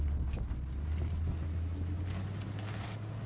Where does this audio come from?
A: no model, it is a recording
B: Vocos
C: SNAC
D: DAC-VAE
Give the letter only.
A